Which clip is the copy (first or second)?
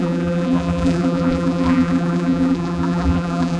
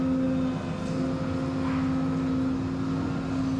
first